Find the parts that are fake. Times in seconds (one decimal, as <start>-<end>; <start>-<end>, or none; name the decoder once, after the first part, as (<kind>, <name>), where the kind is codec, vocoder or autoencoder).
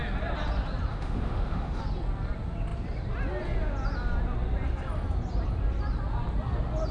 0.9-1.8 (autoencoder, DAC-VAE)